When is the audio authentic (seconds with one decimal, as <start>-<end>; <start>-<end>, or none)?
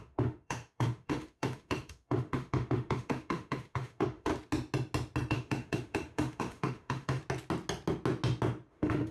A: 4.3-5.3; 7.2-8.7